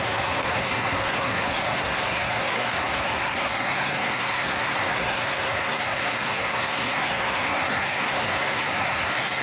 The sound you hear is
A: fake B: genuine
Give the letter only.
A